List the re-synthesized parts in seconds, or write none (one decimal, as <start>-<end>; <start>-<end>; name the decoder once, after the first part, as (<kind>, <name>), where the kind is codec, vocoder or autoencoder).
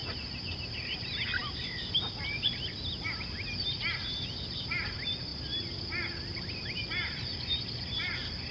0.5-5.3 (vocoder, BigVGAN v2); 6.2-8.5